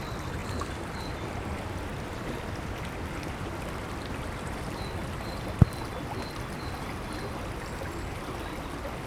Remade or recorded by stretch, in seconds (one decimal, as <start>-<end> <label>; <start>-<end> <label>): 0.0-0.4 recorded; 0.4-1.3 remade; 1.3-1.9 recorded; 1.9-4.8 remade; 4.8-9.1 recorded